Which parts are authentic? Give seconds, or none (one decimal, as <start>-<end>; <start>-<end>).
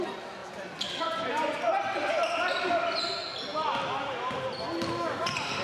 0.0-5.6